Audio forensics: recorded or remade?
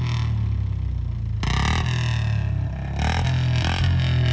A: recorded